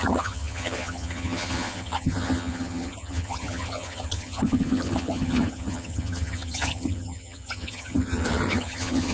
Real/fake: fake